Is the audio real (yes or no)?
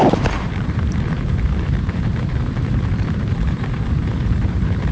no